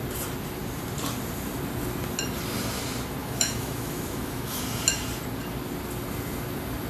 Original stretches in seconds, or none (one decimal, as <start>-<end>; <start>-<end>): 0.0-3.2; 4.6-6.9

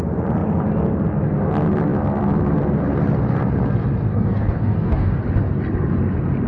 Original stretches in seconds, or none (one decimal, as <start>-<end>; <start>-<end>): 0.0-4.1; 5.2-6.5

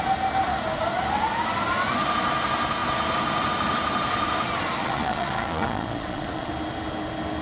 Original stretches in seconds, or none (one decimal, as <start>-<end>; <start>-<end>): 0.0-4.8; 6.5-7.4

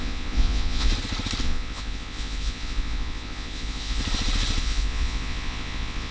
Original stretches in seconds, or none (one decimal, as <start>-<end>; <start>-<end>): 0.9-1.4; 4.0-4.6

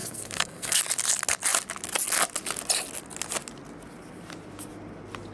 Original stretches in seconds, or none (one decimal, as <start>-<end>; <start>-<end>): 0.8-5.3

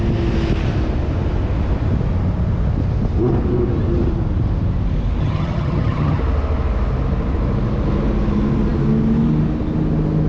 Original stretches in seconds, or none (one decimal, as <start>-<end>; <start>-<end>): 0.0-5.2; 6.2-10.3

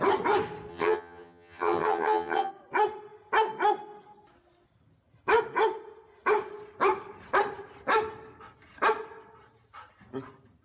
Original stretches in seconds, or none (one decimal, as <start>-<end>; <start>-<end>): 0.0-0.7; 2.5-10.6